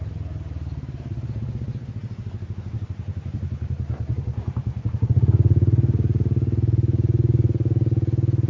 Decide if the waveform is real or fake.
real